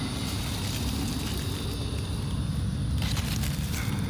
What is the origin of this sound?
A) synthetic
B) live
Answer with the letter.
B